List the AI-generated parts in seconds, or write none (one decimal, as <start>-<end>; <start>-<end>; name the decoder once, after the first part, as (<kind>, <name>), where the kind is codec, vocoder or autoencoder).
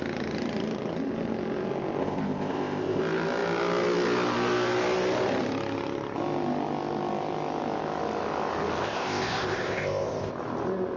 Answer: 2.0-3.0 (codec, ZipCodec); 8.8-10.3